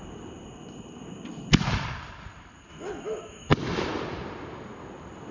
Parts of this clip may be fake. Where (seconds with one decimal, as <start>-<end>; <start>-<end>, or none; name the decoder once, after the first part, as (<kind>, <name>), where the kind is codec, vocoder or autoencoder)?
2.7-3.5 (autoencoder, DAC-VAE)